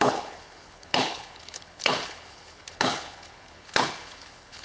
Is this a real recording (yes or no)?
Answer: no